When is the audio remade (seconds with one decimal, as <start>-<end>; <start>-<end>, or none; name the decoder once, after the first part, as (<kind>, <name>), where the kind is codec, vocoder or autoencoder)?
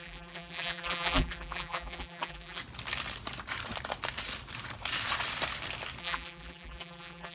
0.0-2.6 (vocoder, BigVGAN v2); 6.0-7.3